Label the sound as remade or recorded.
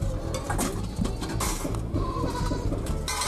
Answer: recorded